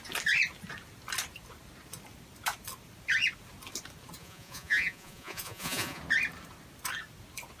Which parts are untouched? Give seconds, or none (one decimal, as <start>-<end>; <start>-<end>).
0.0-4.2; 6.0-7.6